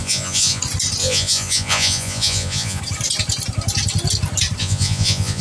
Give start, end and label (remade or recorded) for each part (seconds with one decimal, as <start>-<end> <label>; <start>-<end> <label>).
0.0-0.6 remade; 0.6-1.0 recorded; 1.0-2.8 remade; 2.8-4.6 recorded; 4.6-5.4 remade